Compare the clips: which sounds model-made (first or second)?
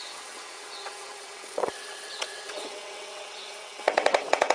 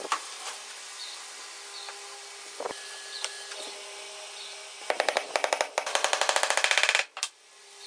first